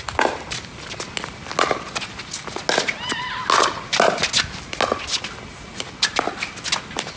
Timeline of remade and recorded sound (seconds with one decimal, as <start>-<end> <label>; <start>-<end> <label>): 0.0-7.2 recorded

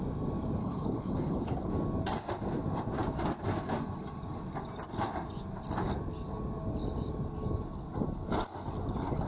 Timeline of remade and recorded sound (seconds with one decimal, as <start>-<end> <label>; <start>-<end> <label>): 0.0-0.6 recorded; 0.6-1.7 remade; 1.7-9.3 recorded

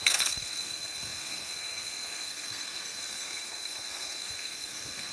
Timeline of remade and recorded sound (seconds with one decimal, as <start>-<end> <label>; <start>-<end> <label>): 0.0-5.1 remade

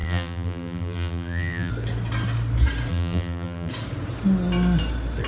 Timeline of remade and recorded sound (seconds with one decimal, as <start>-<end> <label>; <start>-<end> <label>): 0.0-1.7 remade; 1.7-2.9 recorded; 2.9-3.7 remade; 3.7-5.3 recorded